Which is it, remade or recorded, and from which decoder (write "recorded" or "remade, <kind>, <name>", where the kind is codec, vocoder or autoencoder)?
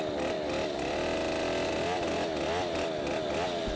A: recorded